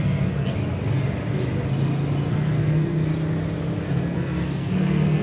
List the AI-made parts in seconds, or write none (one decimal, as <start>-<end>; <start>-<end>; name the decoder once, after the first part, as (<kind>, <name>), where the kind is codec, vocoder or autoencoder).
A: 0.0-0.6 (codec, SNAC); 2.3-3.1; 3.9-5.2